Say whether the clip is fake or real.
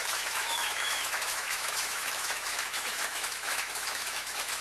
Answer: fake